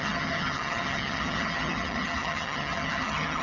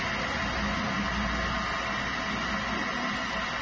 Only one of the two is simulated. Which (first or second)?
first